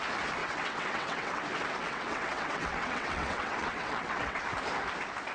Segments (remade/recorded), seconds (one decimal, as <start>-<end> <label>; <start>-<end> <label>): 0.0-0.4 recorded; 0.4-1.4 remade; 1.4-1.8 recorded; 1.8-4.4 remade; 4.4-5.3 recorded